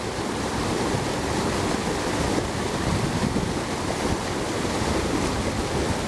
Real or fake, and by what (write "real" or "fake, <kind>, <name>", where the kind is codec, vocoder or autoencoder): real